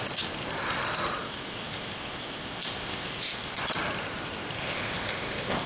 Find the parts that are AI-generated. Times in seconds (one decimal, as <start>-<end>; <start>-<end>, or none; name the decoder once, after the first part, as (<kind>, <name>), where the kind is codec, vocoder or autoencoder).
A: 1.2-3.6 (codec, ZipCodec); 4.6-5.7